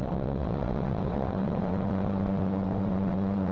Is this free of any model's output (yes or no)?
no